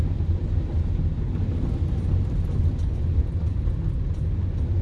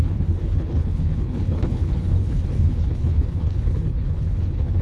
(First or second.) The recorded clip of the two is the first